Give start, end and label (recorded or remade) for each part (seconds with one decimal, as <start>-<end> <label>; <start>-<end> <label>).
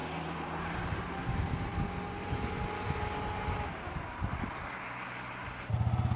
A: 0.0-1.0 remade; 1.0-3.7 recorded; 3.7-4.6 remade; 4.6-6.2 recorded